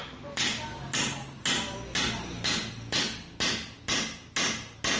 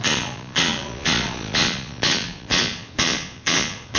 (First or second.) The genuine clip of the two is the first